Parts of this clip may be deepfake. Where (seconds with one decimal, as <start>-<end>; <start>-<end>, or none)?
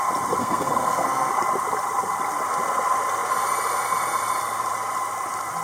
0.4-1.3